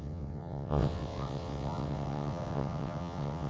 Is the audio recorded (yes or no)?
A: no